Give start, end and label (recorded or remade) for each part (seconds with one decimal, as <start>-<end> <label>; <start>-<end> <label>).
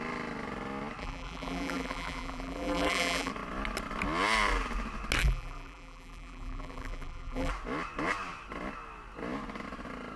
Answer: 0.0-1.0 recorded; 1.0-3.3 remade; 3.3-5.2 recorded; 5.2-7.5 remade; 7.5-10.2 recorded